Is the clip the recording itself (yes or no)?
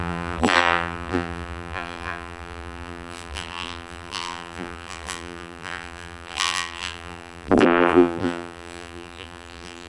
no